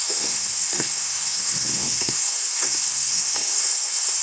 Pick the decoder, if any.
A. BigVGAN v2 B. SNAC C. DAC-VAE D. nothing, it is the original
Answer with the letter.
B